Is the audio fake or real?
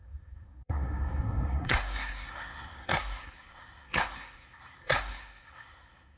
fake